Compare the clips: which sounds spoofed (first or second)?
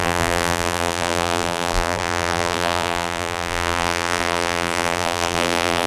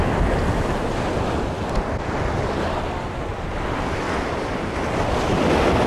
first